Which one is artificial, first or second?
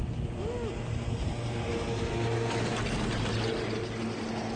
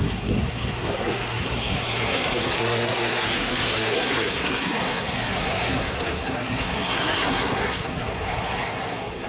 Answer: second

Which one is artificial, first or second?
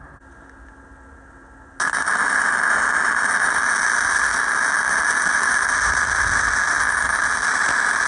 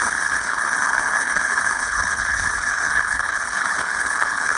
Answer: second